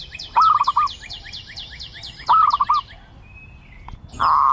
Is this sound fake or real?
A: real